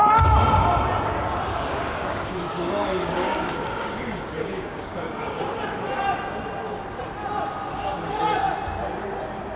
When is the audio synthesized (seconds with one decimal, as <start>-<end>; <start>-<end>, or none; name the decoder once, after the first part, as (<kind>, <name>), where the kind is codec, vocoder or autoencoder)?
1.5-5.4 (codec, DAC); 7.7-8.2